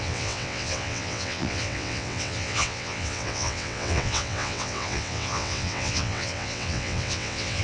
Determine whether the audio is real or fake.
fake